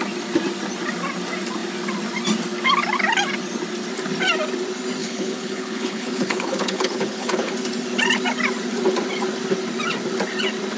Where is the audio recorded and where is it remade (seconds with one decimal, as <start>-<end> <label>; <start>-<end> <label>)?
0.0-5.0 recorded; 5.0-7.5 remade; 7.5-10.8 recorded

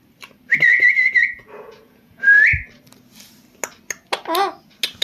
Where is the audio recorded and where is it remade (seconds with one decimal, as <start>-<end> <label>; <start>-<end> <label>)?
0.0-0.7 recorded; 0.7-2.2 remade; 2.2-5.0 recorded

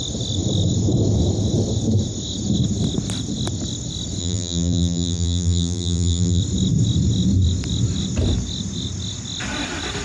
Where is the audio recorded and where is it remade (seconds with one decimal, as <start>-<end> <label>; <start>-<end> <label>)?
0.0-4.2 recorded; 4.2-6.4 remade; 6.4-10.0 recorded